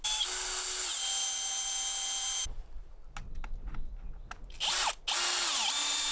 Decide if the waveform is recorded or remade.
recorded